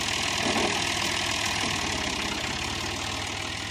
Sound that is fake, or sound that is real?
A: real